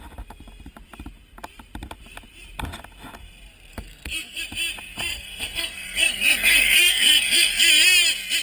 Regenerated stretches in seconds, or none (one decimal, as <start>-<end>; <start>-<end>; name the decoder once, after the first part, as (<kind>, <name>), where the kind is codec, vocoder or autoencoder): 3.7-4.4 (codec, SNAC); 5.1-7.7